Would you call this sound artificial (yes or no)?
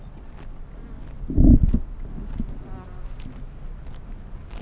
no